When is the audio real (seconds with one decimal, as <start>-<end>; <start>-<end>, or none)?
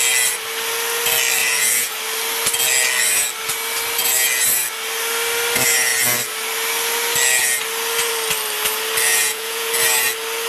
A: 0.0-1.4; 1.9-9.1; 9.7-10.5